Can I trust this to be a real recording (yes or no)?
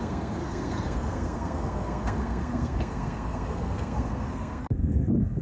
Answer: no